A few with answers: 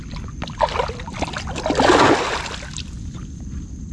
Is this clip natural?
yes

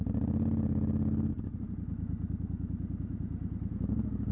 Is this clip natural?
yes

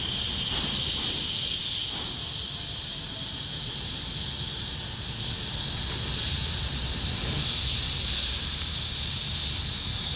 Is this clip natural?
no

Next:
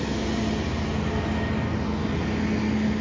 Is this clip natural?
yes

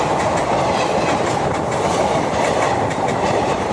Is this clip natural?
yes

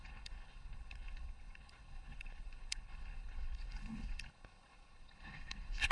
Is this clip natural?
no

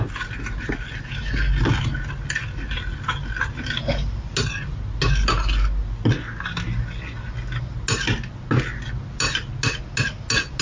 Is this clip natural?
yes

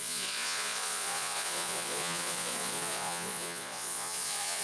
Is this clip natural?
no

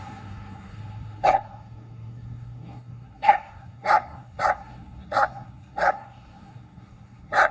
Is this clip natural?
no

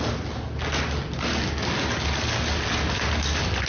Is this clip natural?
yes